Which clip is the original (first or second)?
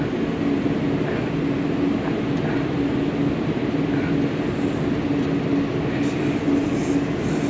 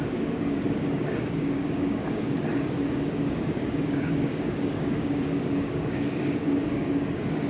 first